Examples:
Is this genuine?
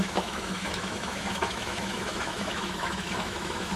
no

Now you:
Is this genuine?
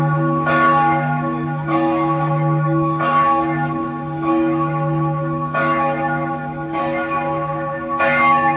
no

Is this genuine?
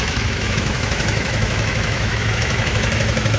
no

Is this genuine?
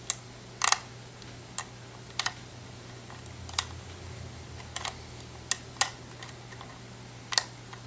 yes